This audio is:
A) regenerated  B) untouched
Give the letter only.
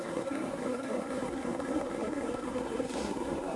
A